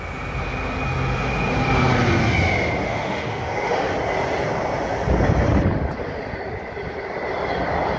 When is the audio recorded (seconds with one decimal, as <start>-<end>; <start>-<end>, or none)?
0.0-2.8; 3.9-8.0